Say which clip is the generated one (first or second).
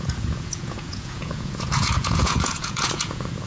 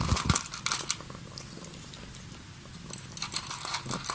first